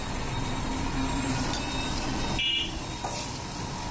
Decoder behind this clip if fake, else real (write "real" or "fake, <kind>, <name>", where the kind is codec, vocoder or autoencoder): real